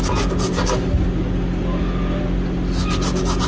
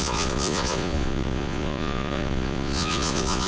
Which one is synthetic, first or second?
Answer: second